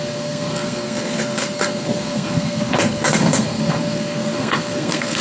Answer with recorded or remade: remade